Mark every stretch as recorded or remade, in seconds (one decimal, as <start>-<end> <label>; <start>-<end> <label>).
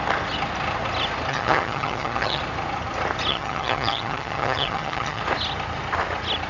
0.0-1.3 recorded; 1.3-2.4 remade; 2.4-3.3 recorded; 3.3-5.2 remade; 5.2-6.5 recorded